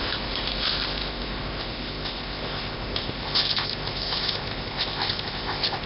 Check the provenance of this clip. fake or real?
fake